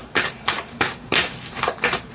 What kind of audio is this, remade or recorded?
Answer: remade